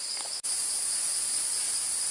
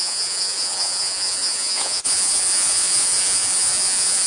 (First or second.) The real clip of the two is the first